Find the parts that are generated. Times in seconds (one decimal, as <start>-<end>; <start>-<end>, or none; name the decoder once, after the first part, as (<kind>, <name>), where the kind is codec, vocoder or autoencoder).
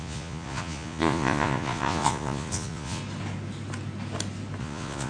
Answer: 0.0-3.0 (vocoder, Vocos); 4.6-5.1